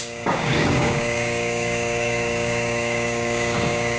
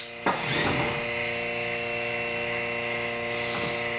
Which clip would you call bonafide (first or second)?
second